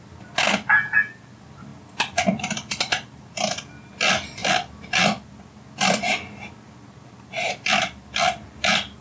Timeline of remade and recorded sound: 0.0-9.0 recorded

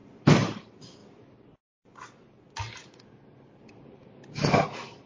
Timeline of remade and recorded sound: 0.0-0.6 remade; 0.6-5.1 recorded

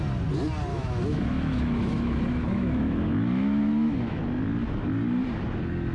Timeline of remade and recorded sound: 0.0-0.7 recorded; 0.7-4.2 remade; 4.2-5.9 recorded

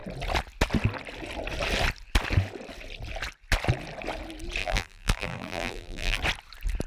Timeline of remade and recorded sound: 0.0-4.6 recorded; 4.6-6.2 remade; 6.2-6.9 recorded

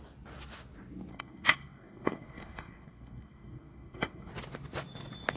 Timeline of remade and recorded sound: 0.0-1.1 recorded; 1.1-4.3 remade; 4.3-5.4 recorded